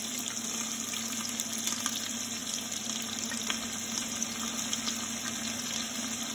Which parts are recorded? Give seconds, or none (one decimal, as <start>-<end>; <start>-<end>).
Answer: 0.0-6.3